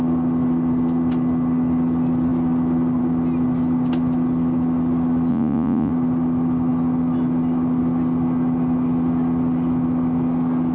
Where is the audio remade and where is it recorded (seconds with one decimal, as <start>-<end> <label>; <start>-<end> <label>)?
0.0-5.3 recorded; 5.3-5.9 remade; 5.9-10.7 recorded